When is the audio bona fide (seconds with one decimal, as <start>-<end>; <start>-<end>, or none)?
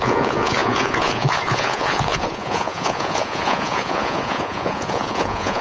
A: none